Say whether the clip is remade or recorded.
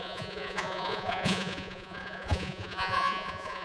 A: remade